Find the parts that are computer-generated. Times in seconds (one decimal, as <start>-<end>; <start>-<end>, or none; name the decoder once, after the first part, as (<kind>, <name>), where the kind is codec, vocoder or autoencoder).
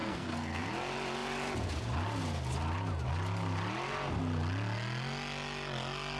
0.0-0.7 (codec, SNAC)